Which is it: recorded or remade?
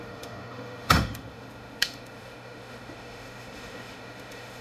remade